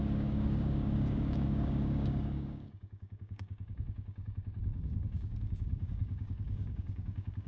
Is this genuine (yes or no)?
no